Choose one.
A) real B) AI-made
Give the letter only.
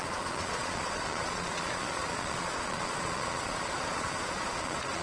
B